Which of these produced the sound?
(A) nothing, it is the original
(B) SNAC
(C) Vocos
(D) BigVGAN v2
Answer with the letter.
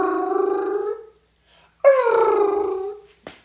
A